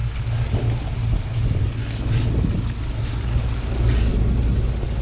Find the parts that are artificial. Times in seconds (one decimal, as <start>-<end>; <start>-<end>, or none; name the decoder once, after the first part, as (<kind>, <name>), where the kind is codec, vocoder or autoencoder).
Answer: 4.1-4.6 (vocoder, BigVGAN v2)